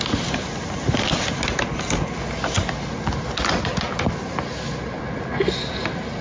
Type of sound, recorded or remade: recorded